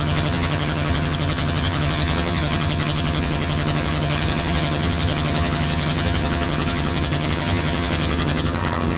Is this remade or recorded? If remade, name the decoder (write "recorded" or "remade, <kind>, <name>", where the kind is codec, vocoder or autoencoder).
remade, vocoder, HiFi-GAN